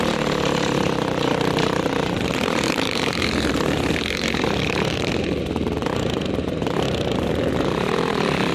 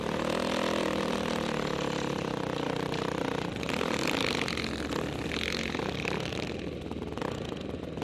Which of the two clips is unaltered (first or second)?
second